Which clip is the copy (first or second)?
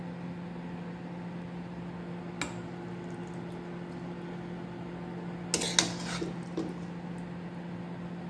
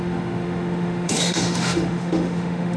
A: second